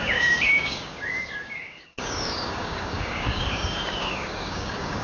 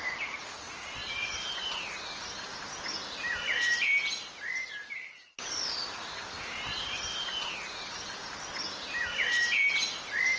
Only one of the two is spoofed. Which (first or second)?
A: first